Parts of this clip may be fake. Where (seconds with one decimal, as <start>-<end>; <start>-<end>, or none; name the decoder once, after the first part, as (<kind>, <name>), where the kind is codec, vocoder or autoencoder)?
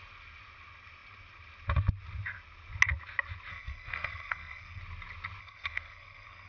3.5-4.8 (codec, SNAC); 5.4-6.5